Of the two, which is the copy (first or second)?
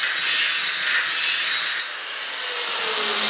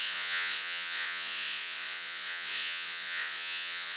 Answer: second